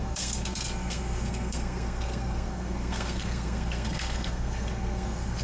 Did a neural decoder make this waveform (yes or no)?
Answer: yes